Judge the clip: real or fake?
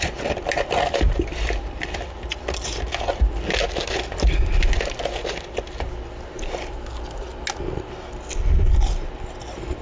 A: real